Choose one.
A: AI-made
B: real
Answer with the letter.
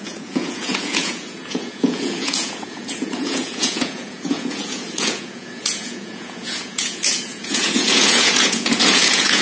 A